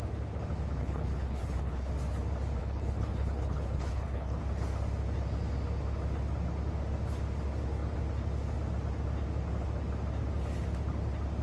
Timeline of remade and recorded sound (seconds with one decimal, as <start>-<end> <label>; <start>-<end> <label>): 0.0-0.8 recorded; 0.8-1.9 remade; 1.9-2.6 recorded; 2.6-4.4 remade; 4.4-11.4 recorded